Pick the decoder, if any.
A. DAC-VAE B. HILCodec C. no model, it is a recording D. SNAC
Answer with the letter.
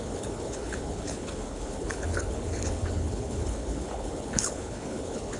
B